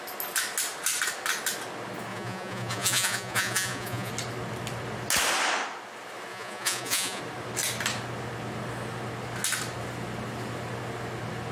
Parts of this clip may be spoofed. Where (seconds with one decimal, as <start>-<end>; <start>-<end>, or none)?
2.1-4.1; 6.3-7.2